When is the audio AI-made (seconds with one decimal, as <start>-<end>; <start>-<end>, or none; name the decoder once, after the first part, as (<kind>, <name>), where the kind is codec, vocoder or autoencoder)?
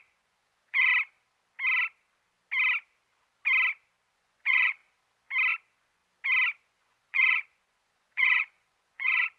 0.0-0.9 (vocoder, Vocos); 4.1-4.8; 5.5-6.0; 6.6-9.4